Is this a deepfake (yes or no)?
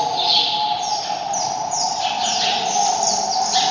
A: no